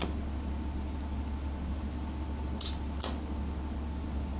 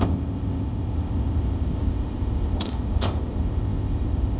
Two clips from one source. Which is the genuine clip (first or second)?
first